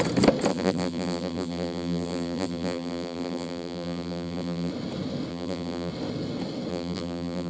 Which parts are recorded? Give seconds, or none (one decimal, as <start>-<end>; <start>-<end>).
0.0-0.5; 4.7-5.3; 5.9-6.7